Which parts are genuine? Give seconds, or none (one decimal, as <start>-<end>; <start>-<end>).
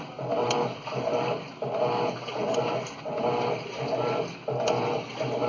0.0-5.5